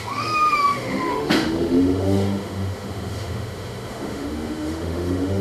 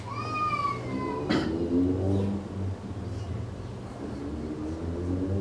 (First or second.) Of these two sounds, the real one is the second